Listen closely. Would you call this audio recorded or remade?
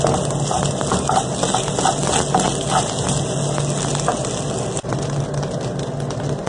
recorded